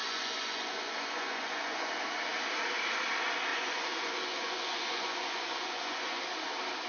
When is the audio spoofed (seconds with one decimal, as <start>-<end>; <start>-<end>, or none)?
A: 0.0-1.9; 3.5-6.2